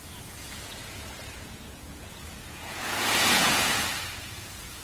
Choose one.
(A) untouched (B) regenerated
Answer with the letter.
B